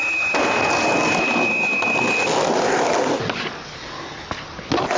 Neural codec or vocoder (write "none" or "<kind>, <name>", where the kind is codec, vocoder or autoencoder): none